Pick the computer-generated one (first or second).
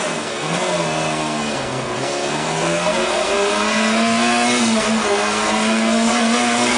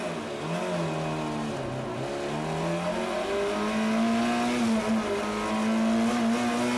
first